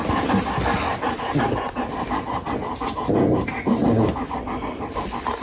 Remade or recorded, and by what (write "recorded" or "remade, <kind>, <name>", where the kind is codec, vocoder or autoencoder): recorded